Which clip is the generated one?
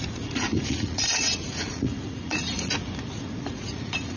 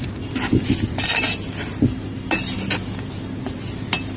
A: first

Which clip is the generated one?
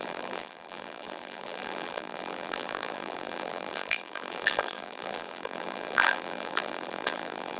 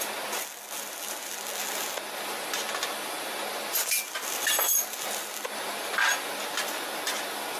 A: first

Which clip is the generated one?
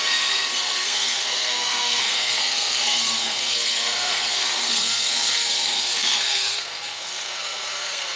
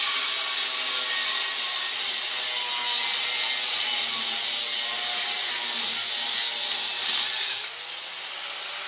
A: first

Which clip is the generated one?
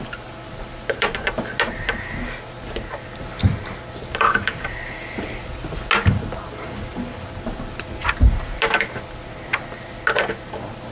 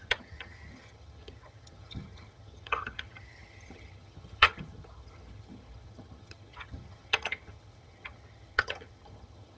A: second